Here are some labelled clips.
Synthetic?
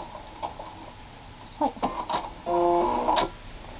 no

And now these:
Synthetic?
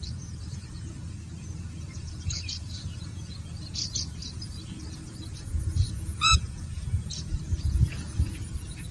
yes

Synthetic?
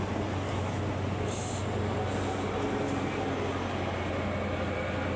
no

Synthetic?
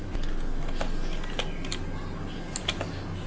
no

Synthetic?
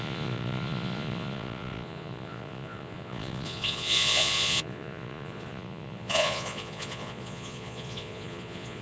yes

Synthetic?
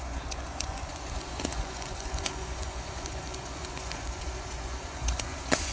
yes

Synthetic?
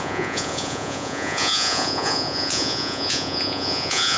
yes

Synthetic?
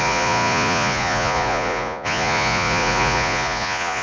yes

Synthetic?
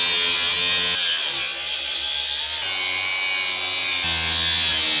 no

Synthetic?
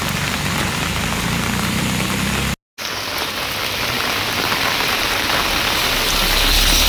no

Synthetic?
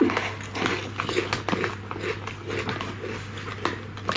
no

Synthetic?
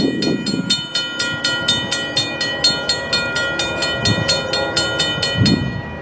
no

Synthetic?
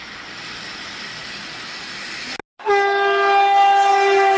no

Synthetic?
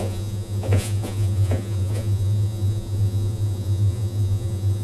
yes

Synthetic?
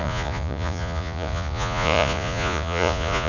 yes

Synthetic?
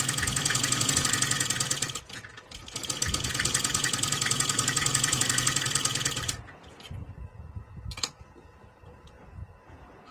yes